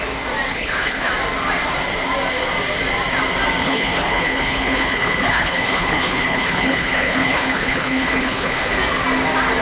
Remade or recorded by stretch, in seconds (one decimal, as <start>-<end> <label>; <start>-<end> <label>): 0.0-0.5 recorded; 0.5-1.1 remade; 1.1-3.6 recorded; 3.6-8.6 remade; 8.6-9.6 recorded